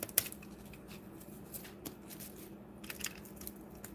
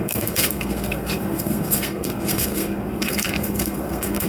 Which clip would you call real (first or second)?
first